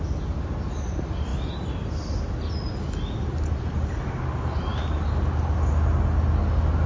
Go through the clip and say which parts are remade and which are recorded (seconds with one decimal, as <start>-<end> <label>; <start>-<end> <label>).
0.0-6.9 recorded